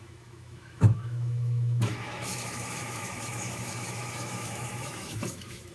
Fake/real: fake